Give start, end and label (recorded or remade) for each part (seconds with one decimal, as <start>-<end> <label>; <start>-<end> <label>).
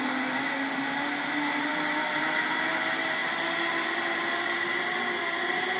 0.0-5.8 recorded